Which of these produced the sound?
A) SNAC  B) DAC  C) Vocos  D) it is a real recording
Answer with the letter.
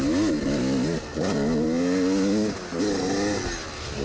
D